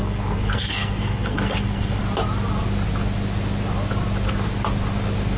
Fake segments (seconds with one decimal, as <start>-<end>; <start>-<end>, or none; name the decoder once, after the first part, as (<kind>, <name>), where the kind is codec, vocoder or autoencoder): 0.0-2.0 (codec, SNAC)